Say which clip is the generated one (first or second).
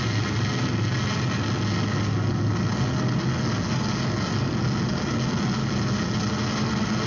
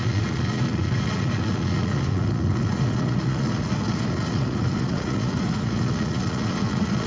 second